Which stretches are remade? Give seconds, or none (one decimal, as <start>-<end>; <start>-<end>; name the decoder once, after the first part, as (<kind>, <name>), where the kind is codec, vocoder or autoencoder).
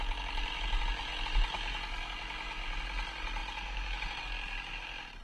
none